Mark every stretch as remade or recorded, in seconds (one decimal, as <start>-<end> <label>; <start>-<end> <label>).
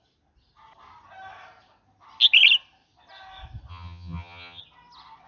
0.0-3.7 recorded; 3.7-4.6 remade; 4.6-5.3 recorded